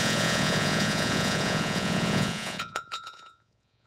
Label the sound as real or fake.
fake